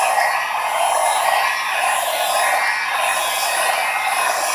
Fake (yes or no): no